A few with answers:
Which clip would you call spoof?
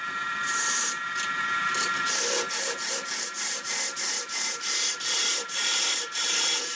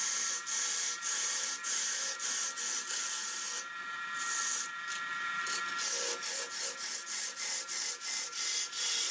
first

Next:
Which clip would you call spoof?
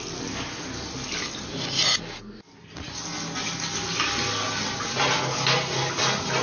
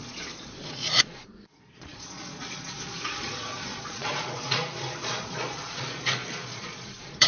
second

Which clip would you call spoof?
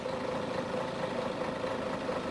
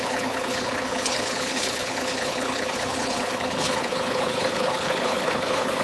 second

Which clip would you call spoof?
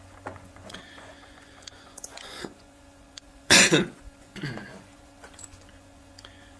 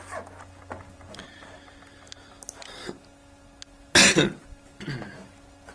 first